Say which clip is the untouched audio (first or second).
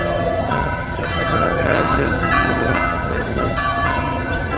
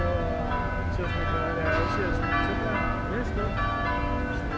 second